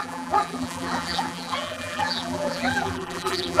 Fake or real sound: fake